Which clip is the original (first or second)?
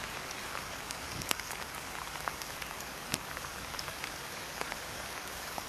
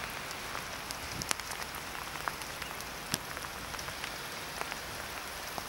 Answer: second